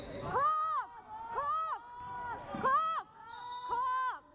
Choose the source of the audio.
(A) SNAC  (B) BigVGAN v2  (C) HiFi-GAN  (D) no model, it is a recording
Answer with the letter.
D